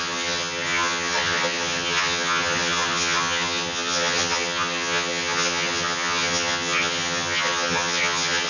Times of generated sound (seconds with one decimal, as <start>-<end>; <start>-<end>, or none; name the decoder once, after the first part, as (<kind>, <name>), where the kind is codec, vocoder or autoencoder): 0.0-8.5 (vocoder, HiFi-GAN)